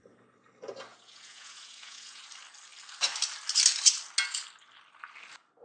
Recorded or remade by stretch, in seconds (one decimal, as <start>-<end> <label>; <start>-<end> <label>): 0.0-0.9 recorded; 0.9-2.2 remade; 2.2-5.6 recorded

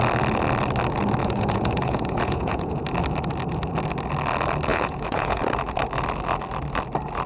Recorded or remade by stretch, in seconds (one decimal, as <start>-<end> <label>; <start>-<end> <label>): 0.0-1.2 recorded; 1.2-2.8 remade; 2.8-4.7 recorded; 4.7-5.4 remade; 5.4-7.3 recorded